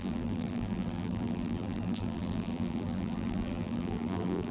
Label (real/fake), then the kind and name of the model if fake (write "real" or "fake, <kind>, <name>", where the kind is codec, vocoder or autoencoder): fake, vocoder, BigVGAN v2